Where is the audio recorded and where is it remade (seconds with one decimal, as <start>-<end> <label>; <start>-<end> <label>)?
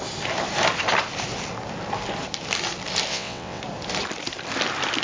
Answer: 0.0-3.1 recorded; 3.1-3.6 remade; 3.6-5.0 recorded